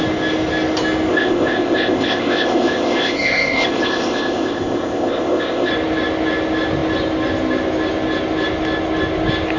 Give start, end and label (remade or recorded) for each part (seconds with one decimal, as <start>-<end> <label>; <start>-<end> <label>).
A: 0.0-1.1 recorded; 1.1-5.7 remade; 5.7-9.6 recorded